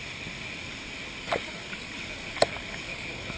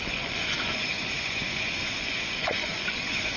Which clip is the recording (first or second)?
first